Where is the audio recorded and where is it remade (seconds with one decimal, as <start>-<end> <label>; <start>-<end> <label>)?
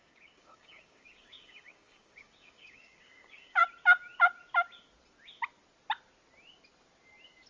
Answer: 0.0-3.6 remade; 3.6-7.5 recorded